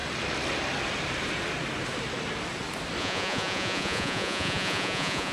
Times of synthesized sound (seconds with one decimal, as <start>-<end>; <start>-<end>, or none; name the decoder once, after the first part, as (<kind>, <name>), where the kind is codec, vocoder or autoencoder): 3.0-5.3 (vocoder, Vocos)